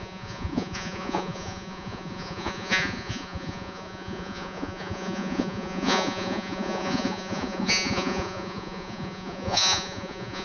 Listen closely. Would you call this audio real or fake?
fake